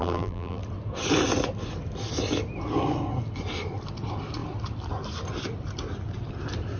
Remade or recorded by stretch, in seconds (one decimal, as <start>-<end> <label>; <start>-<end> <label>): 0.0-0.6 remade; 0.6-6.8 recorded